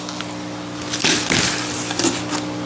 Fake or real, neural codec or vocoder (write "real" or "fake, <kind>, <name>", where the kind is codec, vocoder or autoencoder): real